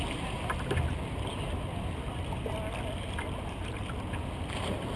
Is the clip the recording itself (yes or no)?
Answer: yes